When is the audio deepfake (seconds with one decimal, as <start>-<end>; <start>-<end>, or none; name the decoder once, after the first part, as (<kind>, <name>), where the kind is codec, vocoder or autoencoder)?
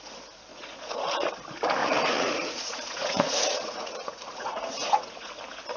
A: 0.5-1.3 (vocoder, Vocos); 1.8-5.3